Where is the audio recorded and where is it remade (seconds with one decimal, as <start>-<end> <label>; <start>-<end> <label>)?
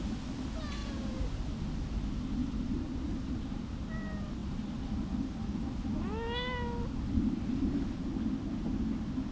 0.0-0.8 recorded; 0.8-1.4 remade; 1.4-2.4 recorded; 2.4-3.9 remade; 3.9-4.4 recorded; 4.4-5.5 remade; 5.5-9.3 recorded